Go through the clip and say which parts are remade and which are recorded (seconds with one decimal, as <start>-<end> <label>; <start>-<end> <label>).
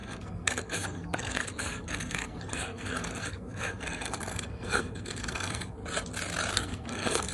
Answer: 0.0-5.8 remade; 5.8-6.5 recorded; 6.5-7.3 remade